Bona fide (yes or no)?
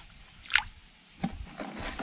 no